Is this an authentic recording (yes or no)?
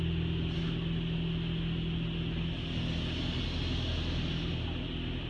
yes